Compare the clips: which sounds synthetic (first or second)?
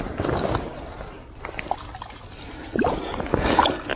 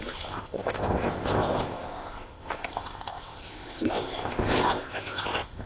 second